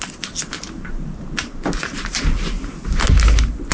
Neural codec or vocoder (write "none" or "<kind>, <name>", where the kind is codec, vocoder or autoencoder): none